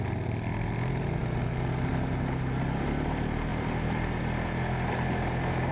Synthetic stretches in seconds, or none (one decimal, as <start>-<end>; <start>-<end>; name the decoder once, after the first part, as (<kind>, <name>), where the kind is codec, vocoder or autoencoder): none